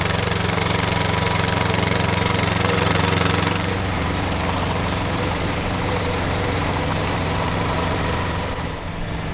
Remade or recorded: remade